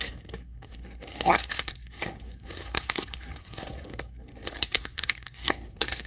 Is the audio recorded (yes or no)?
no